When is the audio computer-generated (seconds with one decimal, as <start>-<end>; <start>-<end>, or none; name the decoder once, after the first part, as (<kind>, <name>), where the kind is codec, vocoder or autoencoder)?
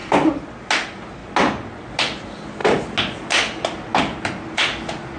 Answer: 0.0-0.5 (vocoder, BigVGAN v2)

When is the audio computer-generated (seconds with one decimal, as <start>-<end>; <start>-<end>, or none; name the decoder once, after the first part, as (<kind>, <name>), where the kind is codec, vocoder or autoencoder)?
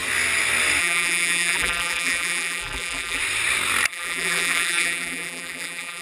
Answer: 0.8-3.2 (vocoder, BigVGAN v2); 3.9-6.0